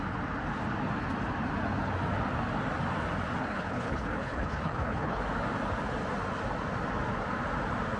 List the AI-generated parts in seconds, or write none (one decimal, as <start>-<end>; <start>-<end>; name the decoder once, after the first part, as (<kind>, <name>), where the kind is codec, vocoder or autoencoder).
3.4-5.2 (codec, HILCodec)